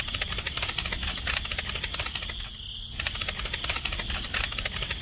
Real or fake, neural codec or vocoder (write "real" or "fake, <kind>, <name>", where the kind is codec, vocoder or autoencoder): real